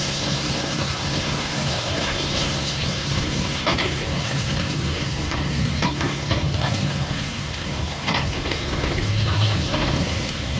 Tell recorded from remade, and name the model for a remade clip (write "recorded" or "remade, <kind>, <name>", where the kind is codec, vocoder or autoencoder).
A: remade, codec, SNAC